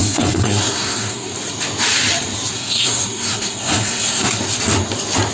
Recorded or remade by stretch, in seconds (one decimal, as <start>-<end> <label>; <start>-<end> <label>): 0.0-1.3 remade; 1.3-2.5 recorded; 2.5-4.4 remade; 4.4-5.3 recorded